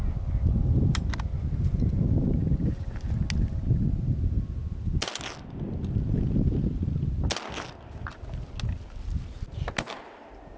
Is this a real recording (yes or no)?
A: yes